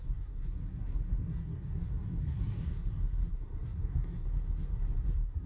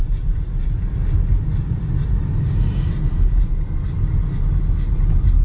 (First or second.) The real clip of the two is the second